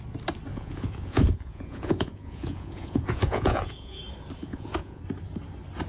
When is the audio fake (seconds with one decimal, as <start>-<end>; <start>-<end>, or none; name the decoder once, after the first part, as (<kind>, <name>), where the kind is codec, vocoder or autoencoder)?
0.5-4.0 (vocoder, Vocos); 4.4-5.0